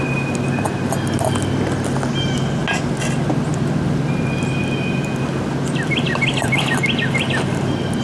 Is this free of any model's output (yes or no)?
yes